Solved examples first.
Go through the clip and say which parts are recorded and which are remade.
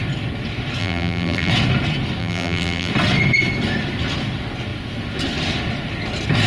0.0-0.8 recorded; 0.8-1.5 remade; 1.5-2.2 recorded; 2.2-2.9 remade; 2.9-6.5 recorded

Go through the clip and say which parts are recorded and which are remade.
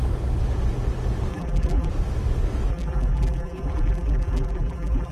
0.0-1.3 recorded; 1.3-1.9 remade; 1.9-2.7 recorded; 2.7-5.1 remade